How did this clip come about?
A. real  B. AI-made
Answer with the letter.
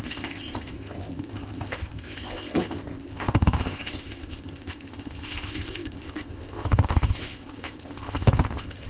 B